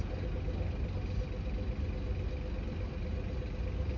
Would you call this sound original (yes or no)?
yes